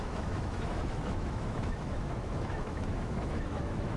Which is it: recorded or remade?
remade